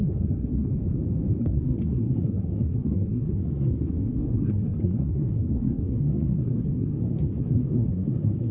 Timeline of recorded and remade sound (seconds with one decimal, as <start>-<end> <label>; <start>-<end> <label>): 0.0-0.7 remade; 0.7-1.4 recorded; 1.4-8.5 remade